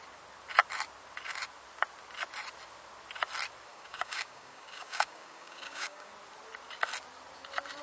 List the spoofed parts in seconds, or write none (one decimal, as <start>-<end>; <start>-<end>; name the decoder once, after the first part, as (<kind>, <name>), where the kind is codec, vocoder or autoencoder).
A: 3.7-6.1 (codec, DAC)

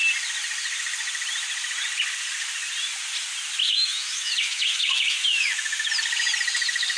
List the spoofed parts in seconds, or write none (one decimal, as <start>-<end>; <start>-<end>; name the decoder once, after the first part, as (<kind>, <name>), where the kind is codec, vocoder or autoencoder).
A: 3.6-5.9 (autoencoder, DAC-VAE)

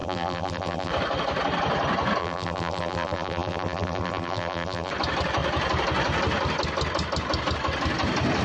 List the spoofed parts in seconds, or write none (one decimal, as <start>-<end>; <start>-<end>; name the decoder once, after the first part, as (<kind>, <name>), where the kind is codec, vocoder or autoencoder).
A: 0.0-0.9 (vocoder, BigVGAN v2); 2.2-4.9

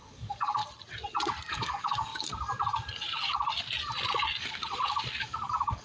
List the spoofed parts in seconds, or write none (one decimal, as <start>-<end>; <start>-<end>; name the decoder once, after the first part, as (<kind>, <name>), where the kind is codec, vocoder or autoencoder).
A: 0.0-0.6 (codec, DAC); 1.5-2.1; 5.2-5.8

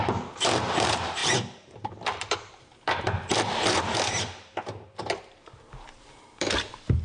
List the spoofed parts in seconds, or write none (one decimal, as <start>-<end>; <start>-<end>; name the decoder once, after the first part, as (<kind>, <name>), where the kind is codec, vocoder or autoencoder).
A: 0.0-7.0 (vocoder, BigVGAN v2)

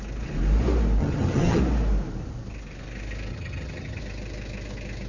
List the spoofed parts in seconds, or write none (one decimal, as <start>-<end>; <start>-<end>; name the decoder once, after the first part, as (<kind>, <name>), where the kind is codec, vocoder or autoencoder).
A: 1.0-1.6 (vocoder, HiFi-GAN); 3.3-4.0

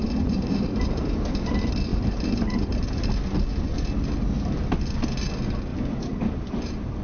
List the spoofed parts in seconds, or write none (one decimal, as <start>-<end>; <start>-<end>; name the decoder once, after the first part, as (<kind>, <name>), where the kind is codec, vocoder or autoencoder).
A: 0.0-1.1 (vocoder, BigVGAN v2); 1.9-3.1; 5.7-7.0